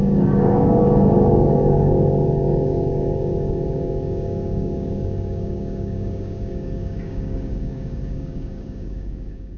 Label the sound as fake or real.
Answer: fake